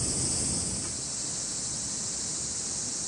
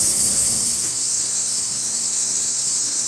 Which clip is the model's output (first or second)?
second